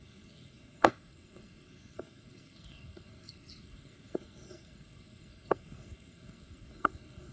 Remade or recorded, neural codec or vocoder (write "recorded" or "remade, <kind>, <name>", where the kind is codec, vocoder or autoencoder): remade, codec, SNAC